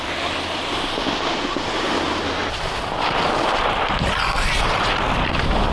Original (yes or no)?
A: no